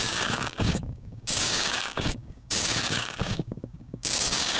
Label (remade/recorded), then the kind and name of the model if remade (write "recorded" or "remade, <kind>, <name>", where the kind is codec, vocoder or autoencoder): remade, codec, DAC